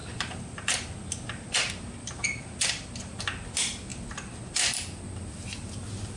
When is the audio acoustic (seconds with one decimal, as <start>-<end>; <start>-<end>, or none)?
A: 0.0-6.2